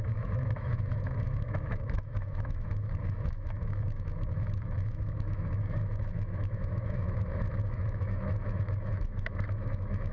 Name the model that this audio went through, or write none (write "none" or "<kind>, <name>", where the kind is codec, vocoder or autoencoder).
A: autoencoder, DAC-VAE